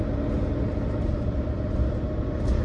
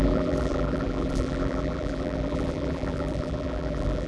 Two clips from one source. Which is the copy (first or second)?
second